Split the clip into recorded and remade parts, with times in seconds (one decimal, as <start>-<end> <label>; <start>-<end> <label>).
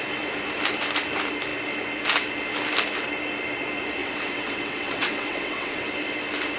0.0-4.0 recorded; 4.0-5.8 remade; 5.8-6.6 recorded